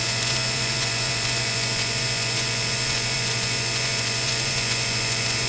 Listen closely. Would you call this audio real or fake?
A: fake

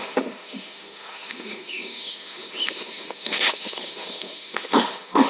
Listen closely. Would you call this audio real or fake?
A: fake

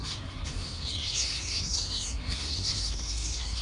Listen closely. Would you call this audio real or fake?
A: fake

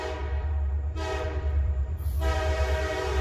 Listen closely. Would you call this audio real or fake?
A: fake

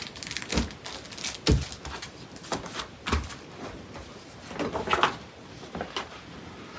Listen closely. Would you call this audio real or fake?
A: real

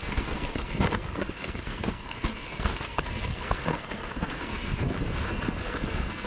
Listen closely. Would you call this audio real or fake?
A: fake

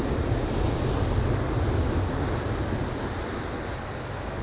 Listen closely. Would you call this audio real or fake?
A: real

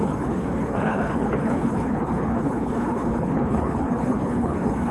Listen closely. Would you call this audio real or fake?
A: fake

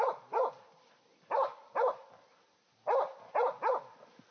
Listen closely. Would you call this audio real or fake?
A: real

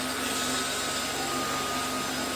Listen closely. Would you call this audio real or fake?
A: real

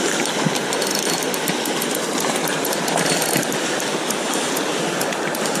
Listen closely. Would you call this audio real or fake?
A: real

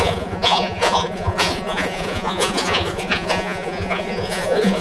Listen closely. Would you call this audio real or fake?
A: fake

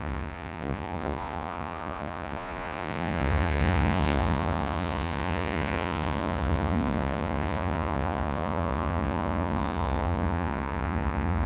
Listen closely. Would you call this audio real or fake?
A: fake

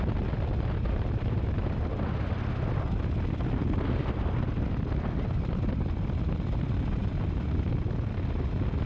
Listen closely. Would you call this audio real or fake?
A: real